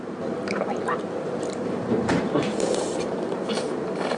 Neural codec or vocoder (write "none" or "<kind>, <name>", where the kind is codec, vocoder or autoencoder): vocoder, BigVGAN v2